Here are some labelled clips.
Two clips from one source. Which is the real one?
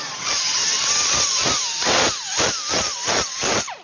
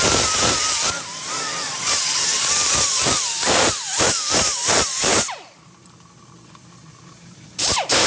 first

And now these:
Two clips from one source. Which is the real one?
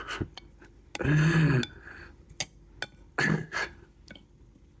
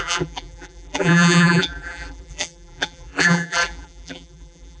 first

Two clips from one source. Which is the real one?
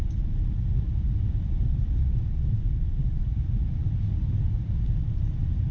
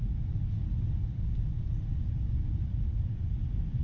second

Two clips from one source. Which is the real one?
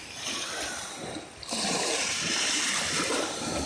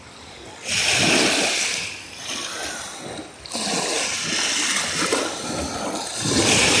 second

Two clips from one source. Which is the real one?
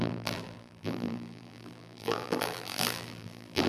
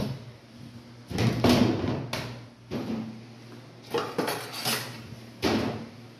second